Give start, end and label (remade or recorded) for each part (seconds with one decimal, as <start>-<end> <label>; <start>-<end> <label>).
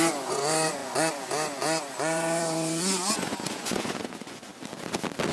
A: 0.0-4.5 remade; 4.5-5.3 recorded